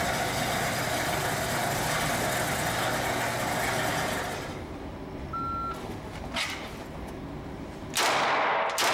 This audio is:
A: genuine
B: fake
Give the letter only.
A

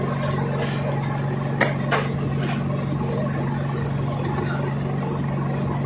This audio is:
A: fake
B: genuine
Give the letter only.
B